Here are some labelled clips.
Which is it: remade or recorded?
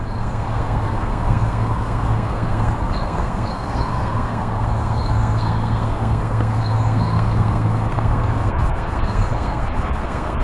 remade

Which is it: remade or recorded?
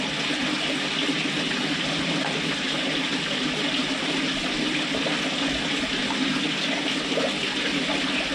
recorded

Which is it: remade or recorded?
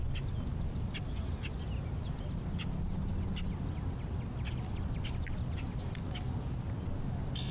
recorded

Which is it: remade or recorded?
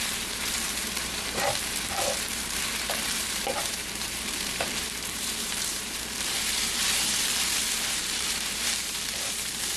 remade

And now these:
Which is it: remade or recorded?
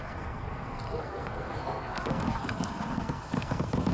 remade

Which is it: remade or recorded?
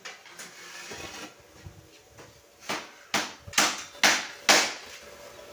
recorded